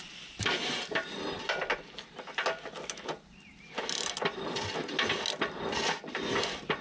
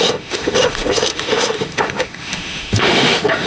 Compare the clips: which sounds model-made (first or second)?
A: second